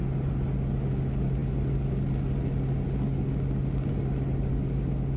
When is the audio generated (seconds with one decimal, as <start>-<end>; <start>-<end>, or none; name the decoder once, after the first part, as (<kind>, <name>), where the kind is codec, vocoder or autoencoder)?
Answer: none